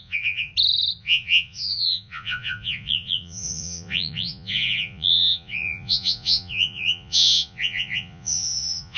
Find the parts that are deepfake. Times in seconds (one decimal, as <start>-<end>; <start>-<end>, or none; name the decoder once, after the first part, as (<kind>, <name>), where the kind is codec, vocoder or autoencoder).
0.0-0.5 (vocoder, Vocos); 1.0-9.0